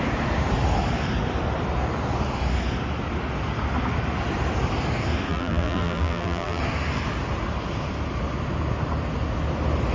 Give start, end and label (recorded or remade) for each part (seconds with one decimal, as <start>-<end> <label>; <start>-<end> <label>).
0.0-5.3 recorded; 5.3-6.6 remade; 6.6-9.9 recorded